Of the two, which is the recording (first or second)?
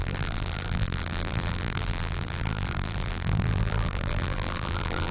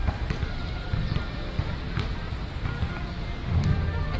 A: second